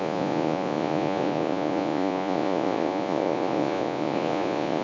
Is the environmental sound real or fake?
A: fake